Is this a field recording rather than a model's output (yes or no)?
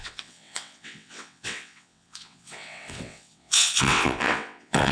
no